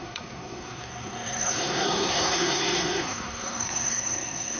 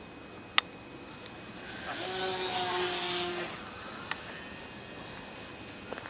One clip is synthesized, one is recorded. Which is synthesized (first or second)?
first